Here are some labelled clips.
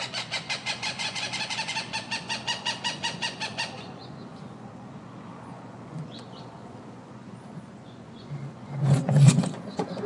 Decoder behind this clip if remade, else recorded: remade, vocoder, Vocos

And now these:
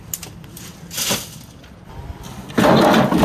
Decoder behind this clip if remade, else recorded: recorded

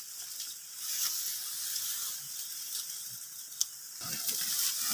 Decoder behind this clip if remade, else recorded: recorded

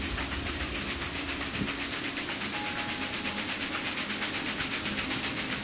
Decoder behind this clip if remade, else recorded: recorded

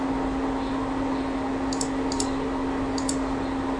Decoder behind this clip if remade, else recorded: recorded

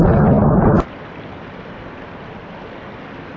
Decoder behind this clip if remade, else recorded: recorded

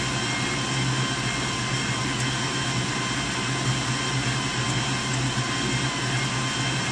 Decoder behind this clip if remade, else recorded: recorded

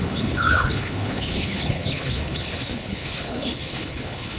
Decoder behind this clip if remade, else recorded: remade, codec, HILCodec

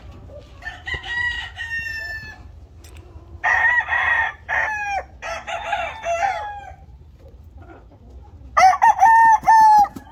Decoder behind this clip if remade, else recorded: recorded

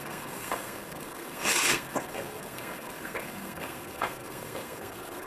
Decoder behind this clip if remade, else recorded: remade, codec, SNAC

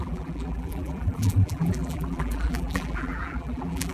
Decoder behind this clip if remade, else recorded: remade, vocoder, BigVGAN v2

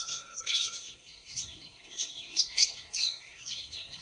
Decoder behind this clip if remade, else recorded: remade, codec, SNAC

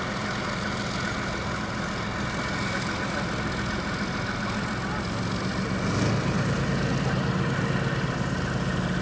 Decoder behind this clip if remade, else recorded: recorded